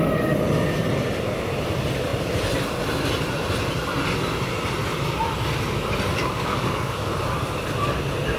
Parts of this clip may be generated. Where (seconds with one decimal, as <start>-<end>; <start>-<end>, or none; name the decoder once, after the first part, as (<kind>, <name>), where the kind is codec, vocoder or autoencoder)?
6.1-7.1 (codec, DAC)